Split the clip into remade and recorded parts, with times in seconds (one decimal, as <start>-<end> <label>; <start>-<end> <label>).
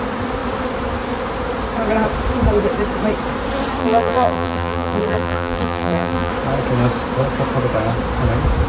0.0-3.8 recorded; 3.8-6.3 remade; 6.3-8.7 recorded